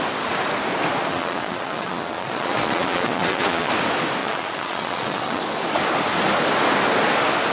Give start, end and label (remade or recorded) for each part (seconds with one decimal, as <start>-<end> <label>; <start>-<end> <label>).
0.0-1.1 recorded; 1.1-3.7 remade; 3.7-4.2 recorded; 4.2-5.4 remade; 5.4-7.5 recorded